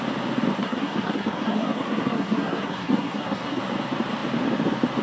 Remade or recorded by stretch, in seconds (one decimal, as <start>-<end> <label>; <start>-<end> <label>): 0.0-0.6 recorded; 0.6-3.6 remade; 3.6-5.0 recorded